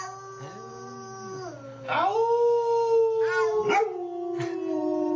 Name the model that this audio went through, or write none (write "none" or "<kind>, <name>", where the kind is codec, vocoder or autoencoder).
none